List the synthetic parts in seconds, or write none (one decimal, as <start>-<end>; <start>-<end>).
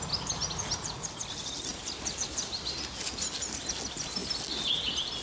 none